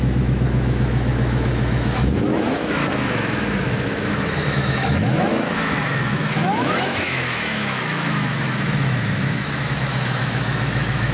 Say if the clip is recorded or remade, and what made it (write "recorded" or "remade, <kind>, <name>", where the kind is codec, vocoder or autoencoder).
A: remade, autoencoder, DAC-VAE